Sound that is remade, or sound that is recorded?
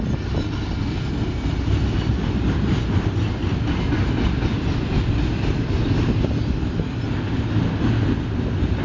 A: recorded